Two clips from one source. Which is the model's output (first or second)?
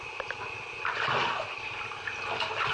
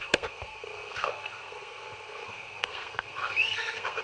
second